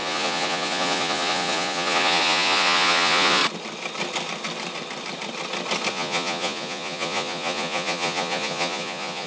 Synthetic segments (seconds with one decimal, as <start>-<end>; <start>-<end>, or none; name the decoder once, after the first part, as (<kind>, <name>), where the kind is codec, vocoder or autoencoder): 0.0-3.4 (vocoder, Vocos); 5.9-9.3